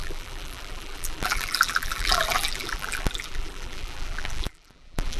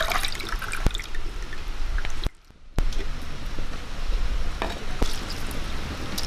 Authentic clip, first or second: second